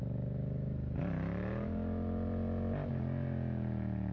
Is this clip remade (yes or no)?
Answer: no